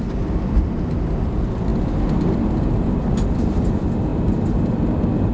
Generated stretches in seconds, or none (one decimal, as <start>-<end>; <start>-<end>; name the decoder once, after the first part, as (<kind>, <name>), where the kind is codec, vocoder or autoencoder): none